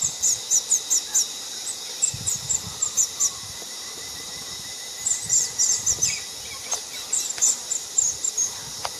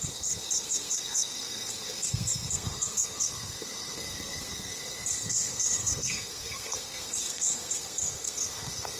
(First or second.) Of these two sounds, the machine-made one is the second